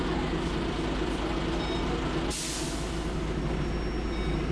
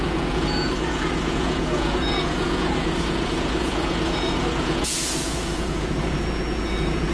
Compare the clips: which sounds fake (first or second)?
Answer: second